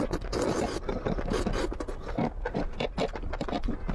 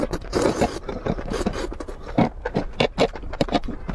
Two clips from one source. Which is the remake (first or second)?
second